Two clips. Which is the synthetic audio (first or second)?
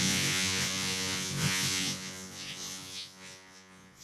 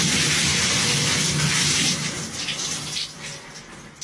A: first